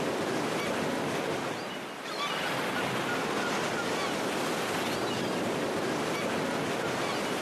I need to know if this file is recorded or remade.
recorded